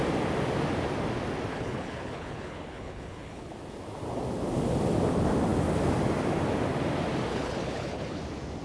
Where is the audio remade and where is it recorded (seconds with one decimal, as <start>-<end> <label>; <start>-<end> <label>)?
0.0-1.5 recorded; 1.5-3.5 remade; 3.5-7.3 recorded; 7.3-8.2 remade; 8.2-8.6 recorded